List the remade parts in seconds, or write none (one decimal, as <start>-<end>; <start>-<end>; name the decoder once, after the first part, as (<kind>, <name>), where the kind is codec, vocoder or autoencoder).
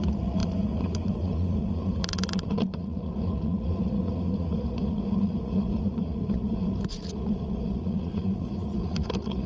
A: 0.0-9.5 (vocoder, Vocos)